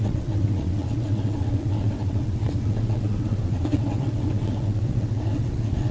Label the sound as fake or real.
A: fake